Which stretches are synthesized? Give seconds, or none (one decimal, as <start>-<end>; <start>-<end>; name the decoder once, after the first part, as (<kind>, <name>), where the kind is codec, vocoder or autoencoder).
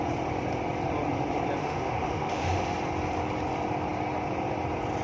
1.6-2.6 (autoencoder, DAC-VAE)